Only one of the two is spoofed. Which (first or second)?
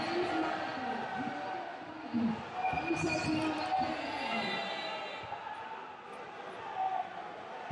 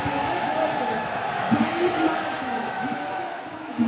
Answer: second